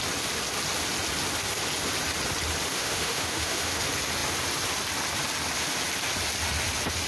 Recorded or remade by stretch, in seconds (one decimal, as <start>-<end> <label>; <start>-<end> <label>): 0.0-2.7 recorded; 2.7-3.8 remade; 3.8-7.1 recorded